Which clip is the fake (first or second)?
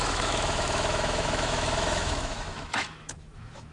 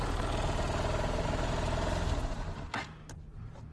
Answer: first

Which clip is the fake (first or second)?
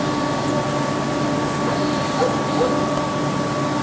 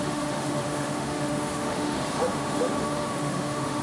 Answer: second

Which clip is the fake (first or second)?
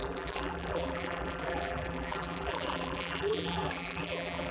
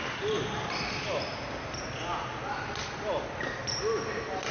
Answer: first